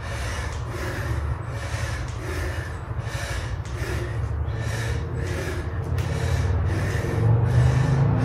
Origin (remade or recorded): recorded